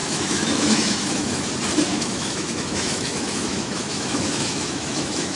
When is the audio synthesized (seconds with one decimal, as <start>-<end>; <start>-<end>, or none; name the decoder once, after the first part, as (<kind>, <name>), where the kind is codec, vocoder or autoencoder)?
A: 0.0-1.5 (autoencoder, DAC-VAE); 1.9-5.4

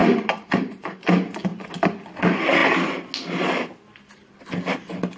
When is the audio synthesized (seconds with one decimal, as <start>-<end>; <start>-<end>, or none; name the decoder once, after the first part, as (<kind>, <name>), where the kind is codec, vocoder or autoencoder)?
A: 0.0-1.0 (vocoder, BigVGAN v2)